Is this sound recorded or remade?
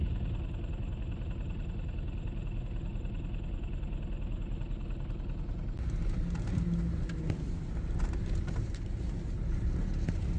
recorded